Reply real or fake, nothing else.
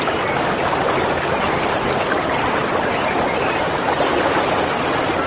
real